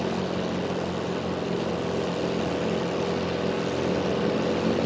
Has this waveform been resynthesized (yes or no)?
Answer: no